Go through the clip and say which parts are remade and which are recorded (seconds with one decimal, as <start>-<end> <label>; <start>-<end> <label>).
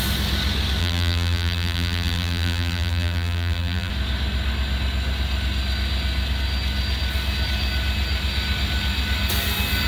0.0-0.8 recorded; 0.8-3.9 remade; 3.9-9.9 recorded